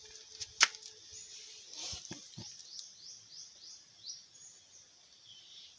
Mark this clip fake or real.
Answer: real